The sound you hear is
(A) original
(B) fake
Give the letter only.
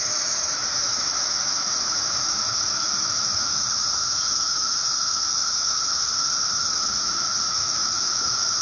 B